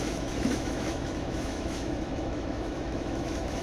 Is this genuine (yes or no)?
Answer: no